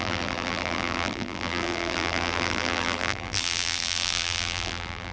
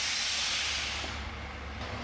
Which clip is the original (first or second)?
second